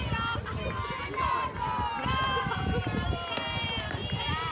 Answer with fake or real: fake